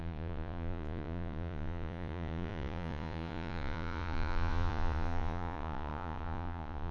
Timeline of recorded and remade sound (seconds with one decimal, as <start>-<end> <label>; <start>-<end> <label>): 0.0-6.9 remade